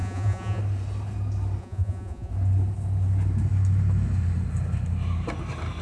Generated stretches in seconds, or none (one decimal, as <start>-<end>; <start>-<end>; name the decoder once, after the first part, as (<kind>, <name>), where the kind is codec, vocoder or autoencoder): 0.0-0.6 (vocoder, Vocos); 1.6-2.3